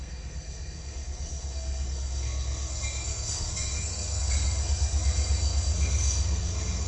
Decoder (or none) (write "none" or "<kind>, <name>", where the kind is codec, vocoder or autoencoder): codec, SNAC